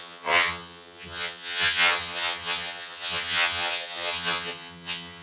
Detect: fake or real fake